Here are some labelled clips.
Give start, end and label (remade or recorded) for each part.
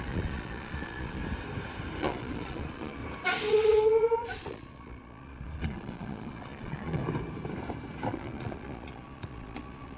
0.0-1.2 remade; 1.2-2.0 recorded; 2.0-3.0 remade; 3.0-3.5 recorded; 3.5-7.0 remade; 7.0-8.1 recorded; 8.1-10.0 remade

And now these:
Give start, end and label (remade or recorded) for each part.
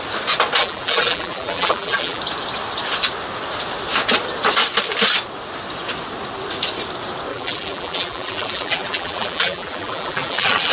0.0-0.6 recorded; 0.6-2.2 remade; 2.2-7.3 recorded; 7.3-10.7 remade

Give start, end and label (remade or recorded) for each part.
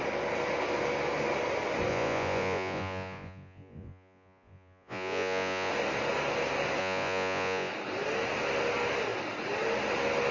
0.0-1.9 recorded; 1.9-5.7 remade; 5.7-6.8 recorded; 6.8-7.7 remade; 7.7-10.3 recorded